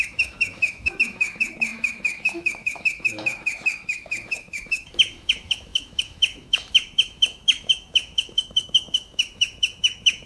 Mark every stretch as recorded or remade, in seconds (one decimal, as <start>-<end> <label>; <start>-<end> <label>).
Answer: 0.0-10.3 remade